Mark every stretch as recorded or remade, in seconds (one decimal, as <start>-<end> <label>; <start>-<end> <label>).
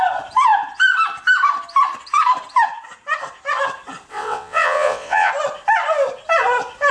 0.0-4.1 recorded; 4.1-5.3 remade; 5.3-6.9 recorded